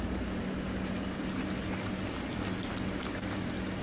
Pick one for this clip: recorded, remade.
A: recorded